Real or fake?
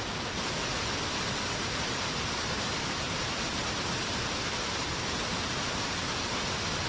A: real